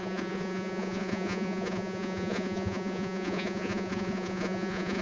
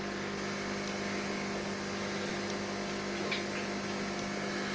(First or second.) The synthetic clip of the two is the first